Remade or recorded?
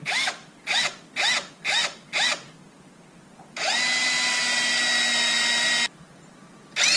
recorded